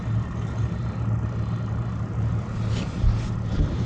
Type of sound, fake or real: real